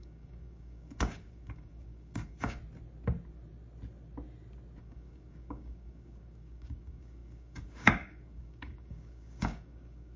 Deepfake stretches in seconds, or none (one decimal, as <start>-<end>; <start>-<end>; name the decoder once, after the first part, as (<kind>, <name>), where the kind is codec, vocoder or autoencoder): 0.0-2.6 (codec, DAC); 4.8-10.2